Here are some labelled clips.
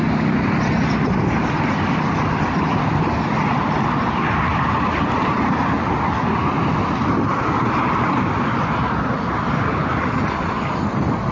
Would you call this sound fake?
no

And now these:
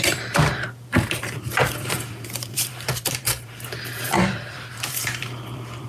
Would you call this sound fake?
yes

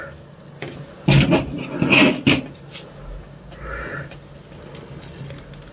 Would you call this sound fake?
no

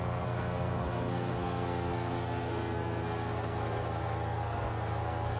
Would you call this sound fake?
yes